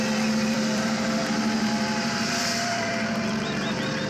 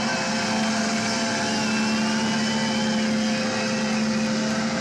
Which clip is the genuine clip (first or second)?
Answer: second